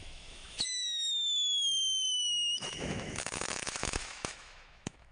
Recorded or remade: remade